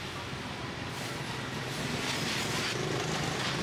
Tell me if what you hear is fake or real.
real